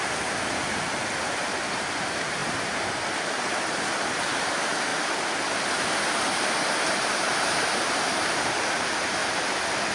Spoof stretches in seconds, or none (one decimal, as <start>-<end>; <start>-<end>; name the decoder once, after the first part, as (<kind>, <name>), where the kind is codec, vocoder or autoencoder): 0.0-4.9 (vocoder, BigVGAN v2); 6.5-9.2